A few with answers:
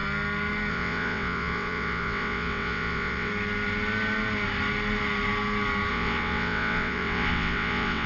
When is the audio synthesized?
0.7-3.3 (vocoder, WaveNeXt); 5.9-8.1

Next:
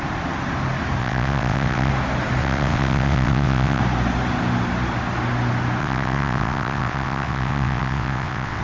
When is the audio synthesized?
1.0-1.9 (vocoder, WaveNeXt); 2.4-3.8; 5.8-8.6

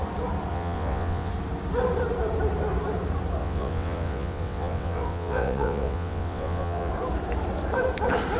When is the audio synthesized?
0.5-1.3 (vocoder, WaveNeXt); 3.4-6.9

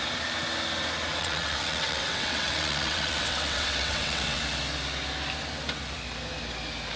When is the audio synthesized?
1.2-4.4 (vocoder, WaveNeXt)